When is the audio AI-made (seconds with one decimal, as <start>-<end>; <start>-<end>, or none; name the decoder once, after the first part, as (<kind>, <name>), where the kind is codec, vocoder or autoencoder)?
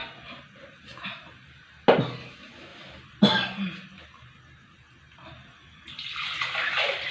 0.0-0.6 (vocoder, BigVGAN v2); 2.7-7.1